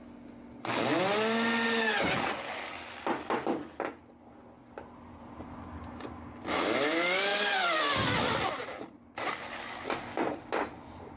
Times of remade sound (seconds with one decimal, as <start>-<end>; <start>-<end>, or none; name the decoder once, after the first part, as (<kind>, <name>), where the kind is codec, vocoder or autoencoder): none